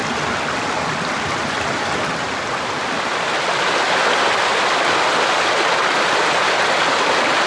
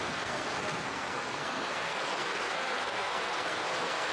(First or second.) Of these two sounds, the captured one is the first